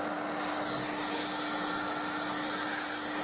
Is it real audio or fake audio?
real